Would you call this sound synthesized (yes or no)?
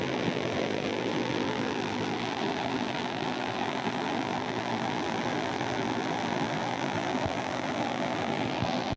yes